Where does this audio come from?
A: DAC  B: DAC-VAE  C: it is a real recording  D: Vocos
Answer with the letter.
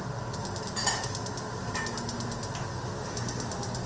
C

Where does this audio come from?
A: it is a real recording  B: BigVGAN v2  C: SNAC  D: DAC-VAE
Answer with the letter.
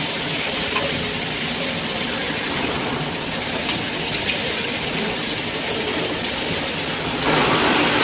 A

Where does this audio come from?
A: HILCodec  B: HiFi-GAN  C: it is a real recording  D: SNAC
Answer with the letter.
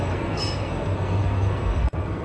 D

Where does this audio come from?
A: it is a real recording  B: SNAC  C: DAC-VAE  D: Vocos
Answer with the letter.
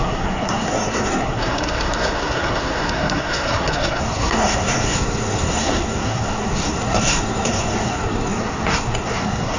B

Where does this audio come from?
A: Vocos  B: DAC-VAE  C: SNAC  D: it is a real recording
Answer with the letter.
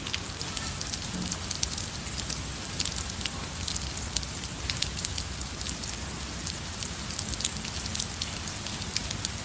D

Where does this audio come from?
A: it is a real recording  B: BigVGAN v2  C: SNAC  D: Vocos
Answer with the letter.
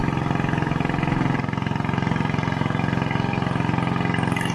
A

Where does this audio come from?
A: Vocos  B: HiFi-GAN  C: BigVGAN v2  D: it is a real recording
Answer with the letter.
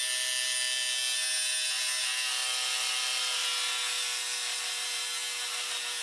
D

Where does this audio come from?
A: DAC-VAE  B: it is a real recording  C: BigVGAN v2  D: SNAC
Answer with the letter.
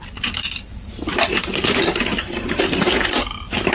B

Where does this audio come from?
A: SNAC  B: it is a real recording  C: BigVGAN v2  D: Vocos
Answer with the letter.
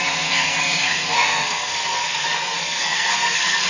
A